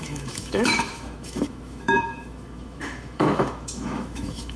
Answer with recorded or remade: remade